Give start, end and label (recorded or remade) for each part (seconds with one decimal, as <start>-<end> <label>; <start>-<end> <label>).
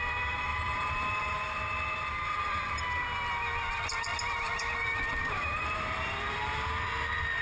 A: 0.0-0.5 recorded; 0.5-1.5 remade; 1.5-4.1 recorded; 4.1-6.8 remade; 6.8-7.4 recorded